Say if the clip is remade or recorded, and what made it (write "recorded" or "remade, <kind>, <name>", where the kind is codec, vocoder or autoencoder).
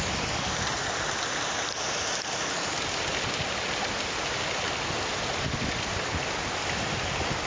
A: recorded